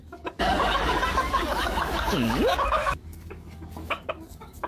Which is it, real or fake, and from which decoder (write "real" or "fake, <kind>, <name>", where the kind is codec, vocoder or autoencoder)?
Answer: fake, codec, DAC